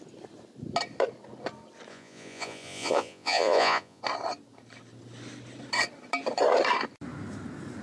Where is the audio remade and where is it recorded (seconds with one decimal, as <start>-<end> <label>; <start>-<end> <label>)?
0.0-1.9 recorded; 1.9-4.0 remade; 4.0-7.8 recorded